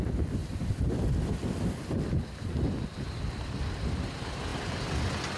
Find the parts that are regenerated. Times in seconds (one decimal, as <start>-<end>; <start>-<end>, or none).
0.4-1.8